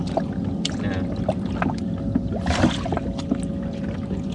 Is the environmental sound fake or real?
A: real